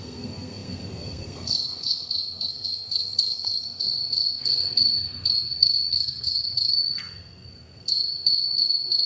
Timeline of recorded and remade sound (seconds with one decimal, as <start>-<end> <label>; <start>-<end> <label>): 0.0-9.1 remade